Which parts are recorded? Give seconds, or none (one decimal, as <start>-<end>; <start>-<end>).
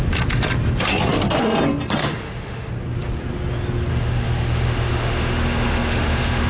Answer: 0.0-2.0; 2.7-3.9